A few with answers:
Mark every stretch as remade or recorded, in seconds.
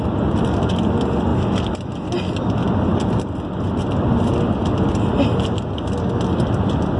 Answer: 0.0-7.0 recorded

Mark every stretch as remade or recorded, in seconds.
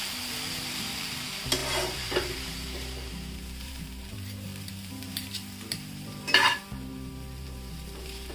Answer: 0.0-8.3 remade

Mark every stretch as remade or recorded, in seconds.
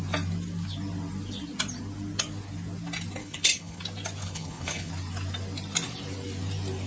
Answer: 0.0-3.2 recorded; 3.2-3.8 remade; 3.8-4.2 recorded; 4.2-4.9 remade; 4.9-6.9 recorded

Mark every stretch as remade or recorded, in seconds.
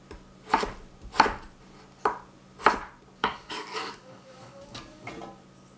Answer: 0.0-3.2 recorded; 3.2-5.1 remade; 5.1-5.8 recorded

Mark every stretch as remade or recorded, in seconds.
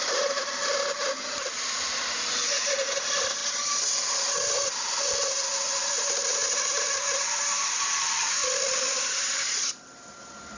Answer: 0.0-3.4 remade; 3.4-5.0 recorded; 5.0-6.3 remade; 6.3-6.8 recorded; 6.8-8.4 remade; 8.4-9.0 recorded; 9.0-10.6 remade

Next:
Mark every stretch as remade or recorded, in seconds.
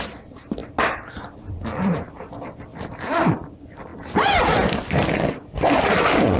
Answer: 0.0-0.6 remade; 0.6-1.1 recorded; 1.1-2.7 remade; 2.7-3.3 recorded; 3.3-6.4 remade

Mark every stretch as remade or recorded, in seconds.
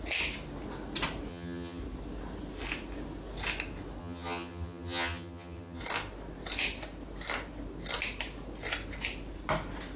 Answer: 0.0-1.3 recorded; 1.3-1.8 remade; 1.8-4.0 recorded; 4.0-5.8 remade; 5.8-10.0 recorded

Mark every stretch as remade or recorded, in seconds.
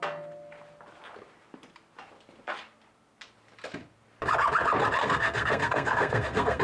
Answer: 0.0-5.0 recorded; 5.0-6.6 remade